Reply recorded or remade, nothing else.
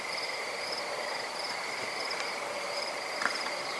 recorded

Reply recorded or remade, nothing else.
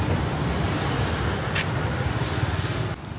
recorded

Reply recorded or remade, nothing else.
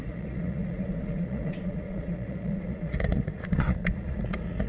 remade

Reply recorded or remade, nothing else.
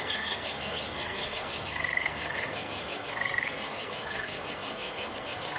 remade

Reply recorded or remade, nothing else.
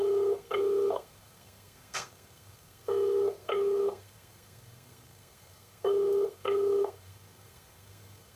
remade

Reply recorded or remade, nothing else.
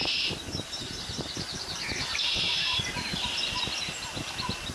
remade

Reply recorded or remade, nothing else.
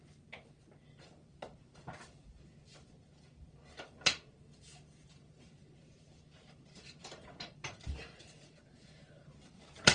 remade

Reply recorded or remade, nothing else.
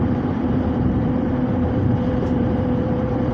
remade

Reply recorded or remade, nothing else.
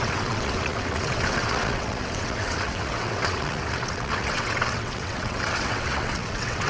remade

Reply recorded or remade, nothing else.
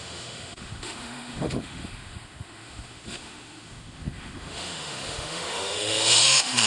remade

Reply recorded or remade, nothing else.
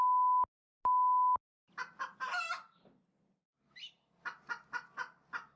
recorded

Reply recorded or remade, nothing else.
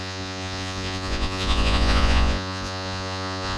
remade